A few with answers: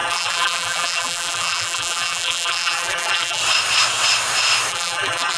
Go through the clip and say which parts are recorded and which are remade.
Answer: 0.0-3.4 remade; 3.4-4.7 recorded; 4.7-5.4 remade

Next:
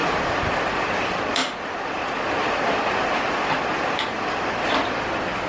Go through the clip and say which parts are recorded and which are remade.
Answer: 0.0-0.5 remade; 0.5-5.5 recorded

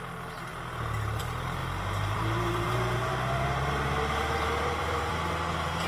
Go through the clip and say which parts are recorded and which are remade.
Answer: 0.0-1.6 recorded; 1.6-5.1 remade; 5.1-5.9 recorded

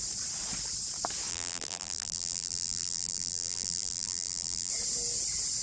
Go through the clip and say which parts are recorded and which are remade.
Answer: 0.0-1.3 recorded; 1.3-4.7 remade; 4.7-5.6 recorded

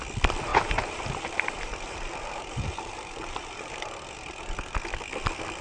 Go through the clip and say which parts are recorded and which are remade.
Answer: 0.0-0.5 recorded; 0.5-3.9 remade; 3.9-5.6 recorded